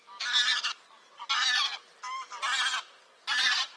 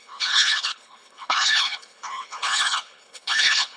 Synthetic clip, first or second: second